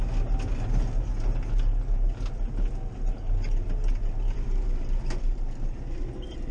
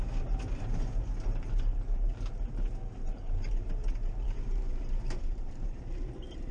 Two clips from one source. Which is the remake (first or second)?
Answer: second